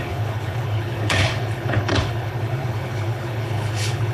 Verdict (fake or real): fake